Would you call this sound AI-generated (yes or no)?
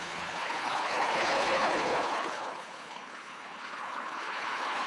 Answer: yes